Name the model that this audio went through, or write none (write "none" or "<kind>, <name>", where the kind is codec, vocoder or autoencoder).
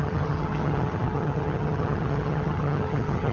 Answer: vocoder, HiFi-GAN